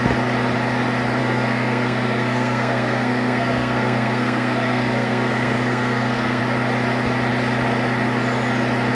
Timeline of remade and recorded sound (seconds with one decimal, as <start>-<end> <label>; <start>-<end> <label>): 0.0-1.2 recorded; 1.2-6.4 remade; 6.4-8.9 recorded